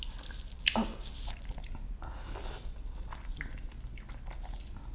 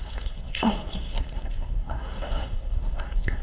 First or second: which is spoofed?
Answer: second